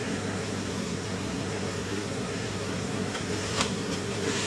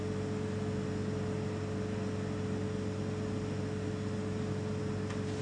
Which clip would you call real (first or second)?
second